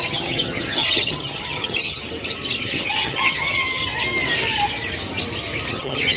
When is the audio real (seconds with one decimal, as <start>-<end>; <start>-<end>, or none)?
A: 2.0-2.6; 3.8-5.7